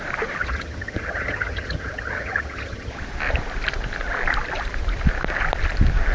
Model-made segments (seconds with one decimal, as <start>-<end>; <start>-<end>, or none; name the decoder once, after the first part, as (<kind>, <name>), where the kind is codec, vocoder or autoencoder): 0.4-2.9 (vocoder, HiFi-GAN)

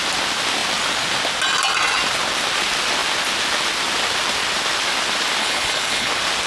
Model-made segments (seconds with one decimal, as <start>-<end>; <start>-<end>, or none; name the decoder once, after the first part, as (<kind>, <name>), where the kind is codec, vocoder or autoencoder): 5.4-6.1 (codec, HILCodec)

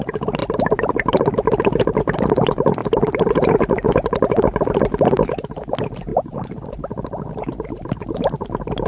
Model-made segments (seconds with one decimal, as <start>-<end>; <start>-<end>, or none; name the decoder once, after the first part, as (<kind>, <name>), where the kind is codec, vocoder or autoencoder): 0.4-0.9 (vocoder, BigVGAN v2); 2.8-3.3; 6.1-7.0

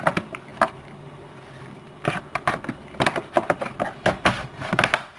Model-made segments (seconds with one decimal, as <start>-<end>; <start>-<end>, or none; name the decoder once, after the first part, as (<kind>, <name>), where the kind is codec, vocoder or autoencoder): none

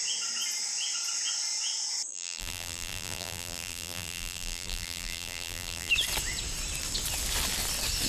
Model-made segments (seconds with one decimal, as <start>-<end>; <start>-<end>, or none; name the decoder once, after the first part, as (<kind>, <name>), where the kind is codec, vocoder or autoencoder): 2.1-5.9 (vocoder, BigVGAN v2)

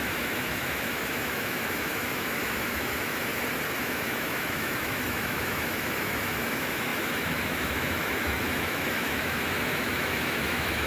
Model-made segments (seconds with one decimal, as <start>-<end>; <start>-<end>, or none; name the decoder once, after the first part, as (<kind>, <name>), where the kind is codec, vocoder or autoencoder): 0.0-3.3 (autoencoder, DAC-VAE); 3.8-10.9

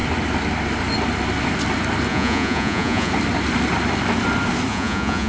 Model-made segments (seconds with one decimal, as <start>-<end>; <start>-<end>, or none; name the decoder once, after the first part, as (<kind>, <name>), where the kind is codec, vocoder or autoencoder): 2.1-3.1 (vocoder, Vocos); 4.7-5.3

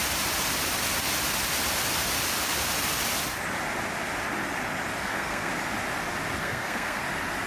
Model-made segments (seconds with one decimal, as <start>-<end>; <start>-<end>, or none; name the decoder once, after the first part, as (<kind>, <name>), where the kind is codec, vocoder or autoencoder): 5.0-5.5 (codec, SNAC); 6.4-7.0